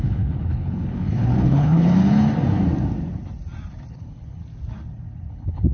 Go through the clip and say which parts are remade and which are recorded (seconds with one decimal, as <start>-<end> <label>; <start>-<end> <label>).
0.0-1.9 remade; 1.9-3.9 recorded; 3.9-4.4 remade; 4.4-5.3 recorded; 5.3-5.7 remade